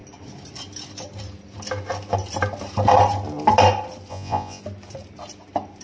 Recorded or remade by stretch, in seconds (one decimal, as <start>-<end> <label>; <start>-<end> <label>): 0.0-4.1 recorded; 4.1-4.6 remade; 4.6-5.8 recorded